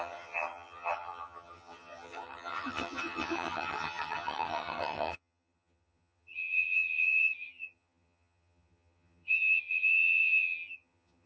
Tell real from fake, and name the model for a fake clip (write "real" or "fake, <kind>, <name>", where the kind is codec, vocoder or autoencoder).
fake, vocoder, HiFi-GAN